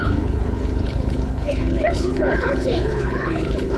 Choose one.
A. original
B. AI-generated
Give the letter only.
B